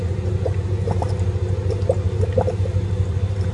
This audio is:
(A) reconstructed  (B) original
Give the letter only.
B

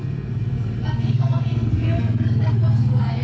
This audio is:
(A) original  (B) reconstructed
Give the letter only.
B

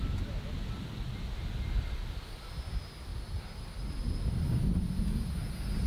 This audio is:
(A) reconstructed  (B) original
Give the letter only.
B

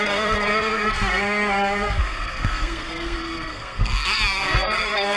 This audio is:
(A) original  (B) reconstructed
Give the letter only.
B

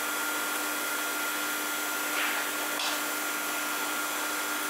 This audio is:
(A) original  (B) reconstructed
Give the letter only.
A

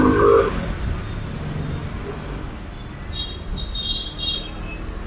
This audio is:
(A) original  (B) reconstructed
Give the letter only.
A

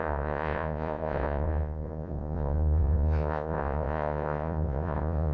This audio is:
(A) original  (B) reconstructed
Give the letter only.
B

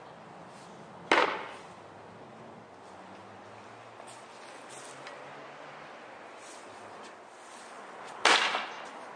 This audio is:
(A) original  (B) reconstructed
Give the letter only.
A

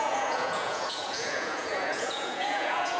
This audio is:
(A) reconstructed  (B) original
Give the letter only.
A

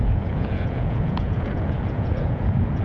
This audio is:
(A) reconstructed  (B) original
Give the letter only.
A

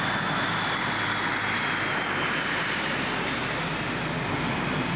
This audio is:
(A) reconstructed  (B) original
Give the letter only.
B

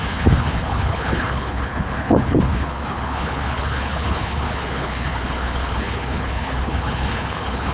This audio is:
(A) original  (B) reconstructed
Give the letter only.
B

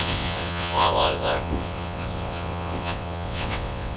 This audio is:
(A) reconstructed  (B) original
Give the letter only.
A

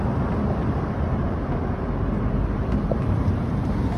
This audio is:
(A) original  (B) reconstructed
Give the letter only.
B